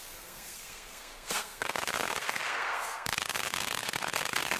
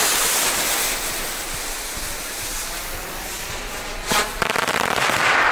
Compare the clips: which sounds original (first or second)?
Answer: second